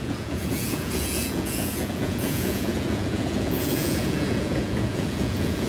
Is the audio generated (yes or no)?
yes